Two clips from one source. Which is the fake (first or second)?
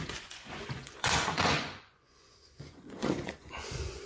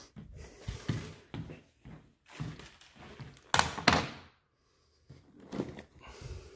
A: first